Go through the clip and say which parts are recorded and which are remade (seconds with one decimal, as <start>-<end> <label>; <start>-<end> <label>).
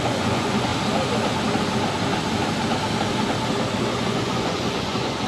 0.0-0.7 remade; 0.7-3.9 recorded; 3.9-5.3 remade